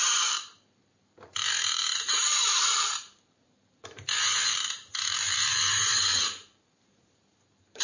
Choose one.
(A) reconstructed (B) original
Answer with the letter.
A